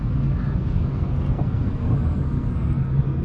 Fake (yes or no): yes